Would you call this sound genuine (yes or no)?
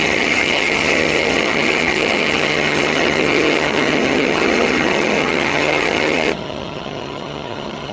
no